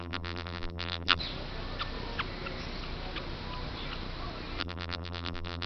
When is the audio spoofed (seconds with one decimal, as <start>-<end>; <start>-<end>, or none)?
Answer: 0.0-1.2; 4.6-5.7